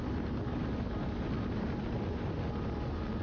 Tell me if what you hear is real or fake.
real